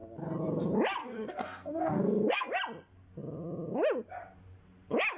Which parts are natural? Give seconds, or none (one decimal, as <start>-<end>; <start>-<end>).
0.0-1.0; 2.5-5.2